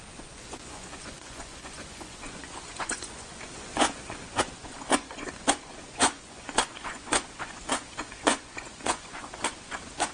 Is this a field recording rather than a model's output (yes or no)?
no